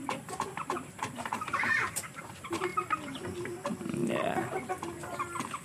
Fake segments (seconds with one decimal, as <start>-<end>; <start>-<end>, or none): 0.0-5.6